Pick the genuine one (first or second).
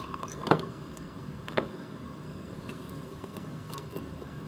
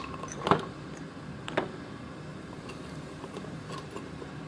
second